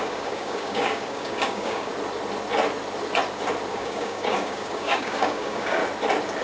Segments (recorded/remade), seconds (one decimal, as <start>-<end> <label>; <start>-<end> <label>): 0.0-1.9 remade; 1.9-3.7 recorded; 3.7-5.8 remade; 5.8-6.4 recorded